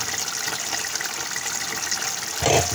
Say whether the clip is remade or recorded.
recorded